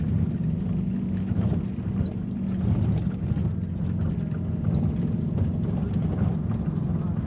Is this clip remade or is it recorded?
recorded